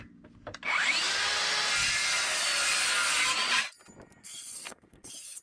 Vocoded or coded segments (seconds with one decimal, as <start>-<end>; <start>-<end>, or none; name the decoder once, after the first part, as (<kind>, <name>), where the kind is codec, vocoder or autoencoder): 4.2-5.4 (codec, SNAC)